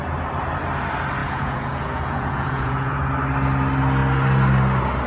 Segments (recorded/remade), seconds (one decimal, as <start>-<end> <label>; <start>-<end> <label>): 0.0-1.2 recorded; 1.2-3.1 remade; 3.1-5.1 recorded